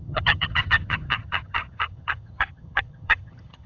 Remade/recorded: remade